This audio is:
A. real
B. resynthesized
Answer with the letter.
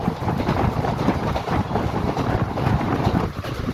B